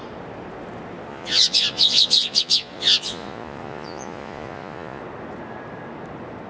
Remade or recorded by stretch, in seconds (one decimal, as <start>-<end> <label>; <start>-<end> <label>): 0.0-1.1 recorded; 1.1-5.0 remade; 5.0-6.5 recorded